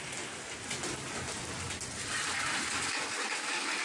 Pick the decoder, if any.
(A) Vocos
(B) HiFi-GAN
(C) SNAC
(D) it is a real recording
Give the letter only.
D